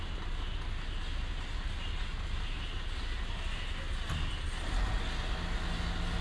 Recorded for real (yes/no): yes